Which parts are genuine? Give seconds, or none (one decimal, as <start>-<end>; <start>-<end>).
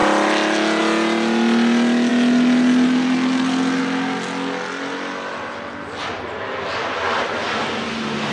0.0-8.3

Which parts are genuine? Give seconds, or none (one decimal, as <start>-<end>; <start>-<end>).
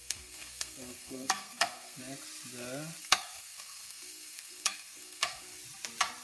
2.0-3.0; 5.6-6.2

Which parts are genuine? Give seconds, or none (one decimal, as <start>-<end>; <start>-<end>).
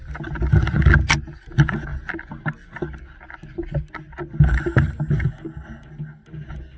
0.0-6.8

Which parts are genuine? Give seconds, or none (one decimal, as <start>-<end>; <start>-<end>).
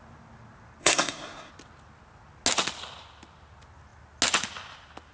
0.0-0.8; 1.5-5.1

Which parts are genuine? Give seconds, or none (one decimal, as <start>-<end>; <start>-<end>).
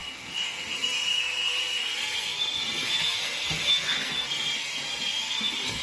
none